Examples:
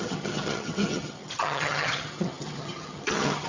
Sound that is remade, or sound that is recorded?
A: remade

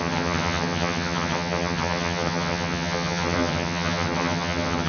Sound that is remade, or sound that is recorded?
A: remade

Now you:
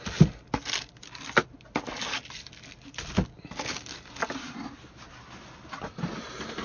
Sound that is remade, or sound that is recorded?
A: recorded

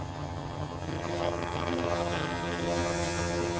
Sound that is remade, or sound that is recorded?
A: remade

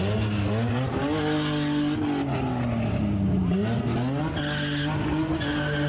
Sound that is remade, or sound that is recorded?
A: recorded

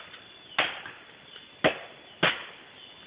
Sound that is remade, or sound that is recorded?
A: recorded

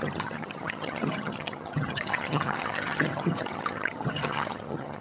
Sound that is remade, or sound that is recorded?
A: remade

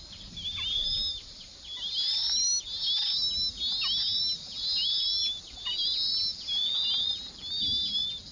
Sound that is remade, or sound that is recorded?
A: recorded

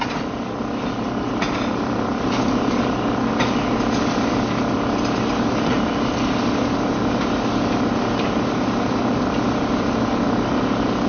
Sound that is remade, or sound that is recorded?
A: recorded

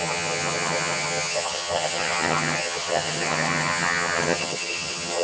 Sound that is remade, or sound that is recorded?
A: remade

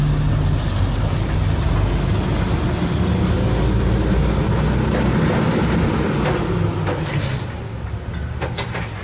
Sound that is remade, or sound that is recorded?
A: recorded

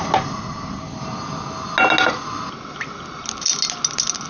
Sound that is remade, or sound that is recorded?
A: recorded